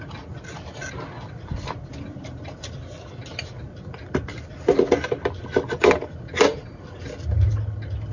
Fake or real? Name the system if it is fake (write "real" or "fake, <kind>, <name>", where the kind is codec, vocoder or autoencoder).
real